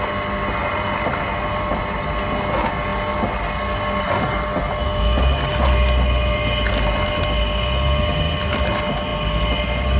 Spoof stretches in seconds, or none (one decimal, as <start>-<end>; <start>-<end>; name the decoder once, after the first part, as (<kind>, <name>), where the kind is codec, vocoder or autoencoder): 0.6-1.8 (vocoder, BigVGAN v2)